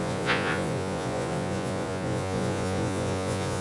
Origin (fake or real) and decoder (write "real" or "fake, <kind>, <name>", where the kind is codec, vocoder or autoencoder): fake, vocoder, Vocos